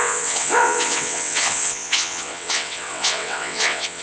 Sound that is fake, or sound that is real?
fake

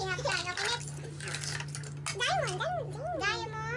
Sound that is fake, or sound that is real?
real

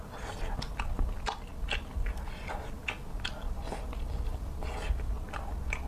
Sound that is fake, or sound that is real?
real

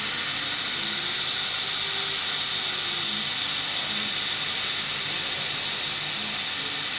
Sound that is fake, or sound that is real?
real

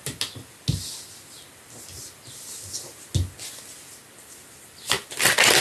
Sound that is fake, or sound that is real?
real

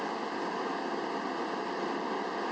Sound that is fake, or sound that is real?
real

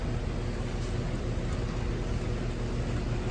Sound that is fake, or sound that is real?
real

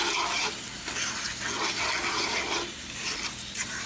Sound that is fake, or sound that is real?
real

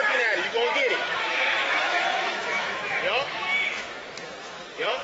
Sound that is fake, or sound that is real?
fake